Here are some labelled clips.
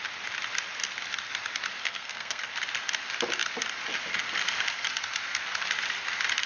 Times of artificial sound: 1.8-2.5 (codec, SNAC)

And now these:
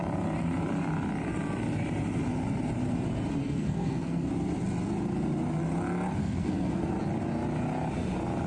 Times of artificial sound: 3.4-4.3 (codec, SNAC); 6.2-6.9

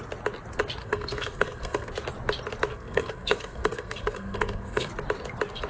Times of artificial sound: 0.8-1.9 (codec, SNAC); 2.7-4.9

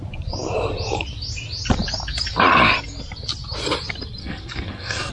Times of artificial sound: 4.2-5.1 (codec, SNAC)

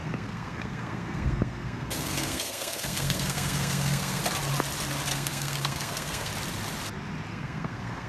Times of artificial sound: 0.0-4.2 (codec, SNAC); 5.1-6.3; 7.3-8.1

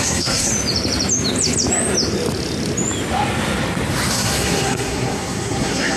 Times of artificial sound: 0.0-0.5 (codec, SNAC); 4.1-6.0

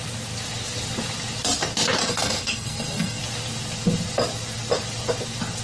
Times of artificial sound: 2.0-3.2 (codec, SNAC)

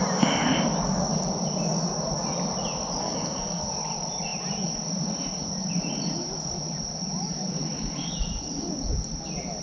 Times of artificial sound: 3.0-3.6 (codec, SNAC)